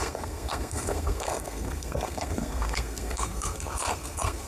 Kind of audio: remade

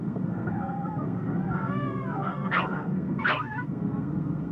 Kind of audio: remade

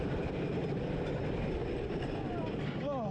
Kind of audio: recorded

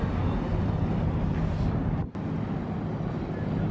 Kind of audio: recorded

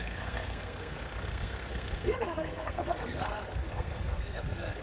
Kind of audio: remade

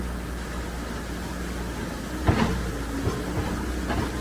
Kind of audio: recorded